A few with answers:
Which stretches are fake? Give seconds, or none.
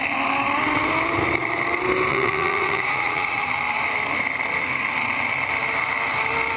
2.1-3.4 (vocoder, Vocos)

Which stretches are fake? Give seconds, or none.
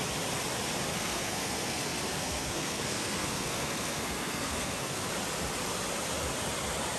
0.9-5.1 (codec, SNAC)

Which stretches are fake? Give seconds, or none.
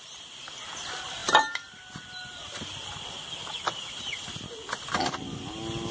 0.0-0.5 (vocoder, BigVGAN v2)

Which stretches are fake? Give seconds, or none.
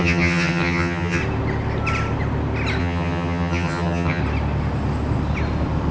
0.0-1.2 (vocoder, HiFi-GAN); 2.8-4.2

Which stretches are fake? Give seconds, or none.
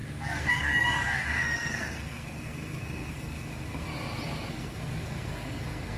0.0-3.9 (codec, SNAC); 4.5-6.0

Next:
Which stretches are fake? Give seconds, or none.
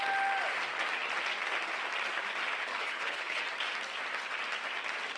2.7-3.4 (codec, HILCodec)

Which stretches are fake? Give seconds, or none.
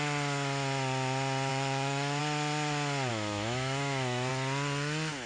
1.5-2.2 (autoencoder, DAC-VAE); 3.1-4.3